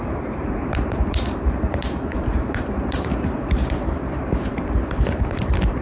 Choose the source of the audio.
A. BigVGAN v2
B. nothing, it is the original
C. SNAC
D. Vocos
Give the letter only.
A